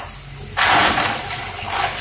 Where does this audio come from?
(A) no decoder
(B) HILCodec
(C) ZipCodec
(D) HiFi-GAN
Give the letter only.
A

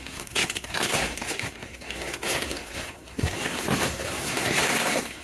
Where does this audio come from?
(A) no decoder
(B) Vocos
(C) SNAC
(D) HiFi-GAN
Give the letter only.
C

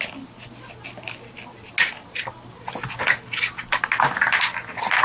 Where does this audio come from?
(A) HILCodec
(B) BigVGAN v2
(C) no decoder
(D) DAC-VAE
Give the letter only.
C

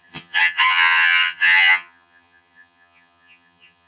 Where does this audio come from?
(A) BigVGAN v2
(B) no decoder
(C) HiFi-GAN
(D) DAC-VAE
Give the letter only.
C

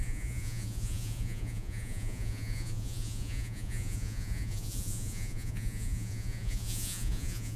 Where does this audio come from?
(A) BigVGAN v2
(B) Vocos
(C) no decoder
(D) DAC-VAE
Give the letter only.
B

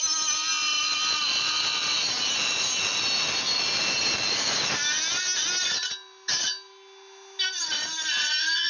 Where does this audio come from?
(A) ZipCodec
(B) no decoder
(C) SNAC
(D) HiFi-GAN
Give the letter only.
B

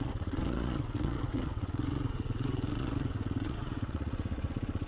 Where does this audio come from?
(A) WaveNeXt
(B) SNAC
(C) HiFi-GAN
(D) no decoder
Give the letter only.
A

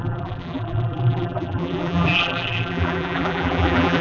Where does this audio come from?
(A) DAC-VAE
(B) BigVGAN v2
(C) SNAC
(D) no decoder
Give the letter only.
B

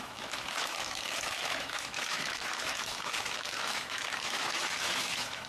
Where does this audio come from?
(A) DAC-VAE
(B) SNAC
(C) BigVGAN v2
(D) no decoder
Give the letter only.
A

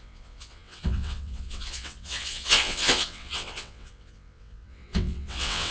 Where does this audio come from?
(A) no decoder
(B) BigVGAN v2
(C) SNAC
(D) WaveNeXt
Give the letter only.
D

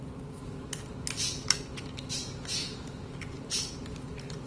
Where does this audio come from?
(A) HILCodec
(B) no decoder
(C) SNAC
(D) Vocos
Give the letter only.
B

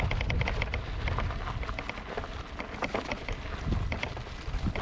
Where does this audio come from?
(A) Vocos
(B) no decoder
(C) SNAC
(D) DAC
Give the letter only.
B